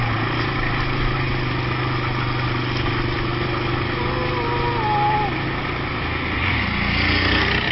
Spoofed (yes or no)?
no